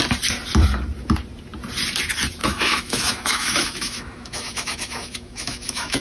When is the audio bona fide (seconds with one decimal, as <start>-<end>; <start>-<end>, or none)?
0.0-2.4